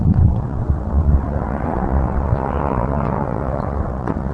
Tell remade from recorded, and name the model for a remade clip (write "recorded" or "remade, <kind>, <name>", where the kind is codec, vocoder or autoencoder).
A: remade, vocoder, WaveNeXt